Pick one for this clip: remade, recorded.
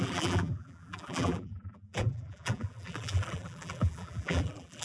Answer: remade